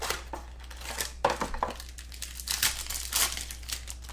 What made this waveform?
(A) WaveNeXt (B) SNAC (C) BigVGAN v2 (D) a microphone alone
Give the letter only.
D